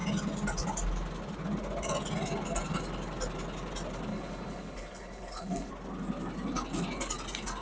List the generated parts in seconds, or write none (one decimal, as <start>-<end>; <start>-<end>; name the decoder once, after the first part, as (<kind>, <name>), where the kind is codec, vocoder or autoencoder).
4.1-5.7 (codec, HILCodec)